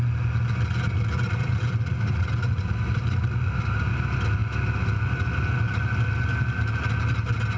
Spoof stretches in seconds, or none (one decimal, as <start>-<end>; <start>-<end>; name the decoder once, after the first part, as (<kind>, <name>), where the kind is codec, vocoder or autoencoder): none